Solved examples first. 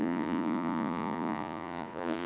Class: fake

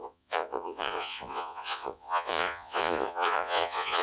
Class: fake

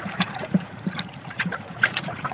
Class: fake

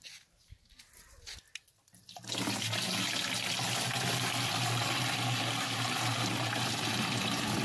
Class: real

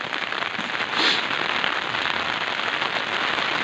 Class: real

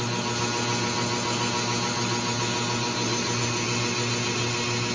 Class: real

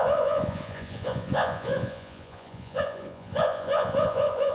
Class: fake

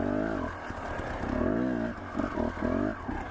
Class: real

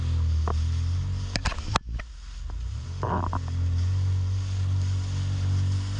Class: real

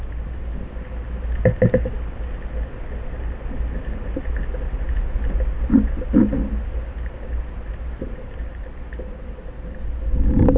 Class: real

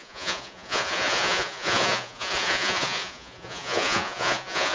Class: fake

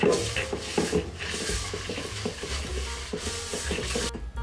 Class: real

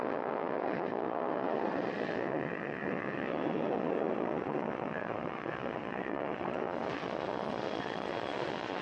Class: fake